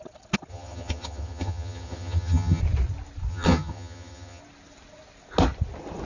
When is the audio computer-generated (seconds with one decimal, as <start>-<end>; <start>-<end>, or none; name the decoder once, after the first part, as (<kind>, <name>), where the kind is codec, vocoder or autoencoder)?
0.5-2.6 (vocoder, HiFi-GAN); 3.3-4.4